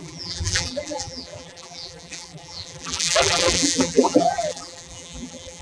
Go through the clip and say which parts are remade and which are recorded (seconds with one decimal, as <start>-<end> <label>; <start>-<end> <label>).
0.0-5.6 remade